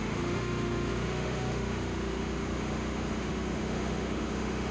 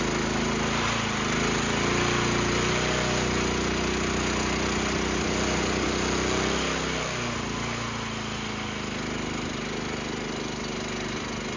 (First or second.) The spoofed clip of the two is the first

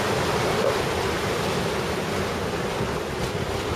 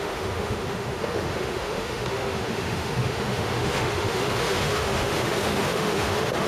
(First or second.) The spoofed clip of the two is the second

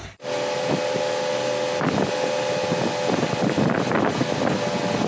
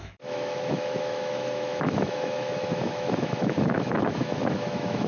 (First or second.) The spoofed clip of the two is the second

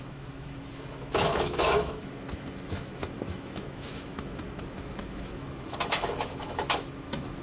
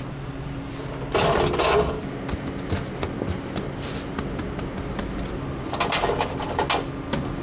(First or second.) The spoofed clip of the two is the first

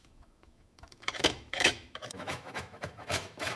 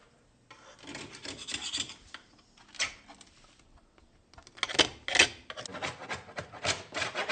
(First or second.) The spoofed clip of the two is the first